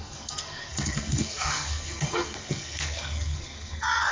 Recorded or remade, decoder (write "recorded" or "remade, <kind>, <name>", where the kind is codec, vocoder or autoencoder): remade, codec, SNAC